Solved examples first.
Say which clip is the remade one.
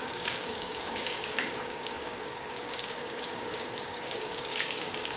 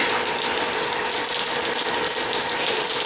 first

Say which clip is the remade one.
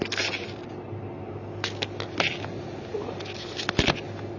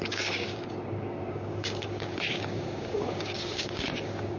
second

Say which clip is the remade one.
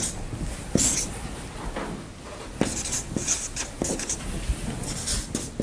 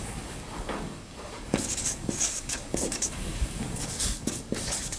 second